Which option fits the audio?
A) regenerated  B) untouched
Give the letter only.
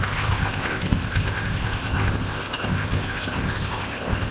A